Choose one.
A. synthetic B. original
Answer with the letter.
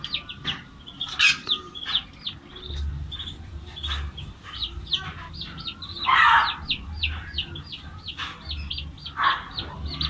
B